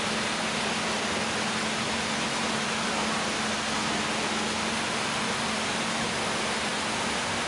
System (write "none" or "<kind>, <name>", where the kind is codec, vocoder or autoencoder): none